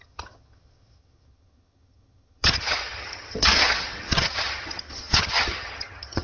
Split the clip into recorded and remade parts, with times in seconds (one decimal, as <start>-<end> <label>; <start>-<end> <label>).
0.0-6.2 remade